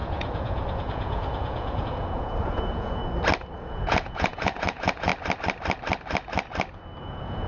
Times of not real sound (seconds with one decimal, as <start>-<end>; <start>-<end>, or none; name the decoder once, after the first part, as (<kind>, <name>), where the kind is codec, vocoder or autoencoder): 0.0-3.0 (vocoder, Vocos); 3.5-5.1; 7.0-7.5